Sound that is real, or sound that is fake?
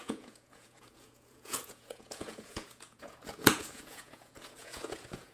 fake